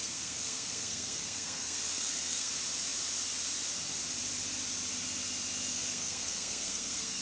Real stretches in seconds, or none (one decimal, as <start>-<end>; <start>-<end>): 2.5-5.7